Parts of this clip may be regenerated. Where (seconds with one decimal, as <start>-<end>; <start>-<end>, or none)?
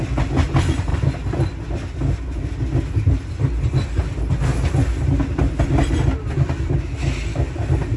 none